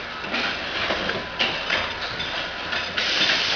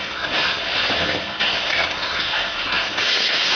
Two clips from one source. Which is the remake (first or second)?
second